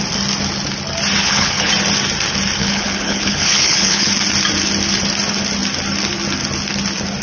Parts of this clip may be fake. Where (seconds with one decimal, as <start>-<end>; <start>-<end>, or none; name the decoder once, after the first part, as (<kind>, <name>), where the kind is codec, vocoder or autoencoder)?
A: 1.2-1.7 (codec, HILCodec); 2.6-4.1